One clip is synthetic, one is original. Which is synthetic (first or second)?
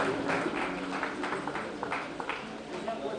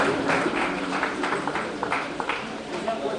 second